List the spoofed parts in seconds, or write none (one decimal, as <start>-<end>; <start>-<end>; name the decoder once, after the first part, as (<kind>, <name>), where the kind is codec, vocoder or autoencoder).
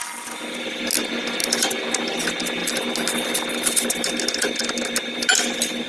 1.4-2.2 (vocoder, BigVGAN v2)